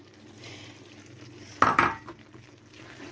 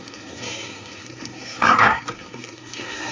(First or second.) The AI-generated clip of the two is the second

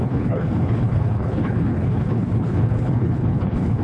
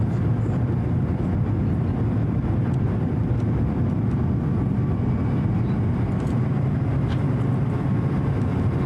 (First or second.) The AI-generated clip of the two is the first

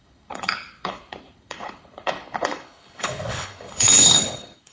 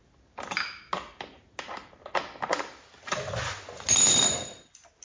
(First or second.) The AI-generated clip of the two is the first